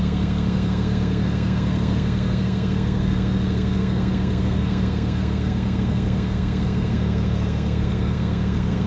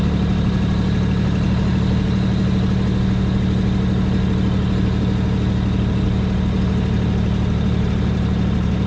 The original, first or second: second